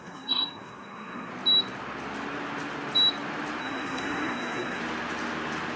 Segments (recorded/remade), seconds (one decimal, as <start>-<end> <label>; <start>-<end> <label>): 0.0-1.3 remade; 1.3-3.6 recorded; 3.6-4.8 remade; 4.8-5.8 recorded